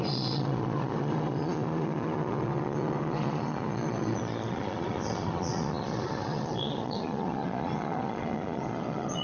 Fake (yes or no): yes